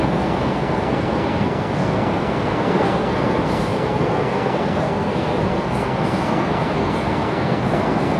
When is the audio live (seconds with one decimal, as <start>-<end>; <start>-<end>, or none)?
none